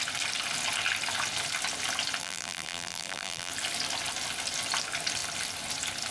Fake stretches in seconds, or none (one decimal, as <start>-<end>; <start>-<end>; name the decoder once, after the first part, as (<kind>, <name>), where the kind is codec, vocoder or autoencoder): 2.2-3.5 (vocoder, BigVGAN v2)